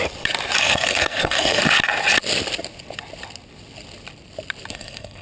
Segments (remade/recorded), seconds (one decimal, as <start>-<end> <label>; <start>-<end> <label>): 0.0-0.6 recorded; 0.6-1.6 remade; 1.6-4.7 recorded; 4.7-5.2 remade

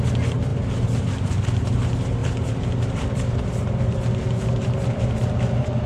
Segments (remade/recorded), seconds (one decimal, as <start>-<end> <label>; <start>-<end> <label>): 0.0-5.9 recorded

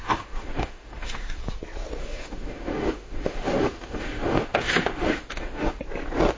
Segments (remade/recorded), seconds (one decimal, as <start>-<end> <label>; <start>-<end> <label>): 0.0-1.4 remade; 1.4-2.0 recorded; 2.0-5.8 remade; 5.8-6.4 recorded

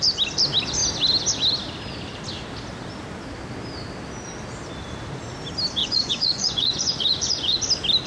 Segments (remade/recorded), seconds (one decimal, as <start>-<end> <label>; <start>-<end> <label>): 0.0-5.8 recorded; 5.8-7.6 remade; 7.6-8.1 recorded

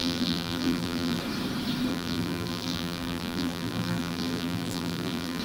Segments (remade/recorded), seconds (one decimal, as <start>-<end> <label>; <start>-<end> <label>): 0.0-1.2 remade; 1.2-1.9 recorded; 1.9-5.4 remade

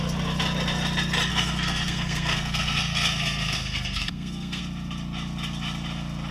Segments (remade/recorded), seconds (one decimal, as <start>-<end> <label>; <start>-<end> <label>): 0.0-1.3 recorded; 1.3-4.6 remade; 4.6-6.3 recorded

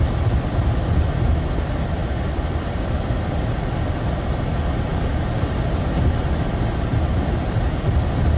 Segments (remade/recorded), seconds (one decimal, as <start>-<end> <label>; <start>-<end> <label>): 0.0-2.0 recorded; 2.0-3.3 remade; 3.3-4.9 recorded; 4.9-6.5 remade; 6.5-8.4 recorded

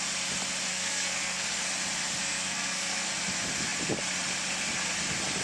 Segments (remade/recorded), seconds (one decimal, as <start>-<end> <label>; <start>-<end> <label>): 0.0-0.7 recorded; 0.7-1.7 remade; 1.7-2.2 recorded; 2.2-3.1 remade; 3.1-5.4 recorded